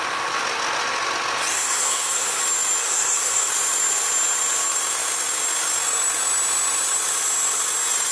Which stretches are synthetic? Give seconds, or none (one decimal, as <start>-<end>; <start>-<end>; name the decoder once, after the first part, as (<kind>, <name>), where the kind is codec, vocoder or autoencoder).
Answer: 1.5-2.4 (codec, SNAC); 2.8-3.5